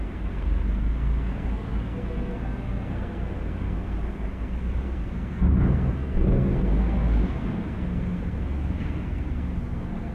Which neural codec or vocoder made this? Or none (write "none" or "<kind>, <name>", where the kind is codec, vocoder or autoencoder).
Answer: codec, SNAC